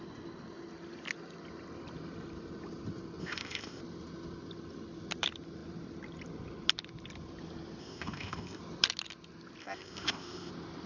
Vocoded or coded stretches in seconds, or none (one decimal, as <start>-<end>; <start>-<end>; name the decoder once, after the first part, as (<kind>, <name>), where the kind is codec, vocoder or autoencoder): 3.2-3.8 (codec, ZipCodec); 7.8-8.6; 9.6-10.5